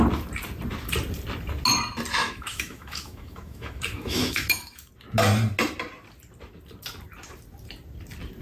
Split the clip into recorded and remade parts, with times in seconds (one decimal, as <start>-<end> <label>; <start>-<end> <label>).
0.0-2.2 recorded; 2.2-4.9 remade; 4.9-8.4 recorded